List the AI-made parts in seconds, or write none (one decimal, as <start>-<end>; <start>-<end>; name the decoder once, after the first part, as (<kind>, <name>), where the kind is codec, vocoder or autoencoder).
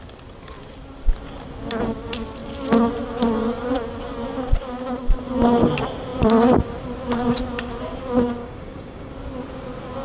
8.4-9.1 (codec, DAC)